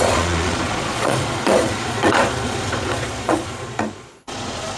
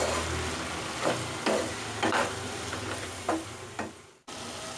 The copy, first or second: first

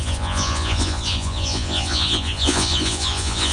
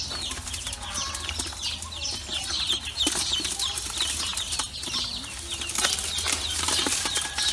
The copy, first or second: first